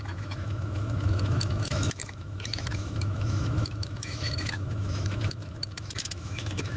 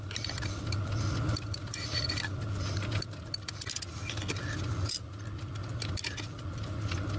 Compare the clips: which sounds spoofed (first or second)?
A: first